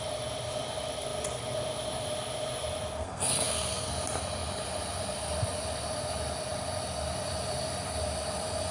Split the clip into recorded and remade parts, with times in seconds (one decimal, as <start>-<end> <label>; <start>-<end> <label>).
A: 0.0-3.0 recorded; 3.0-3.9 remade; 3.9-8.7 recorded